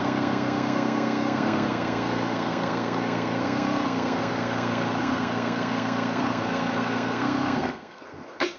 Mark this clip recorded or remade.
remade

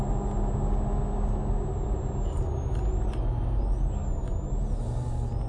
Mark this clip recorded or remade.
recorded